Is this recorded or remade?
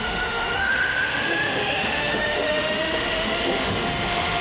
remade